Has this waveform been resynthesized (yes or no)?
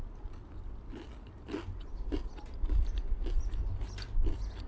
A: yes